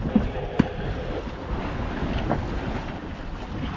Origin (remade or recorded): recorded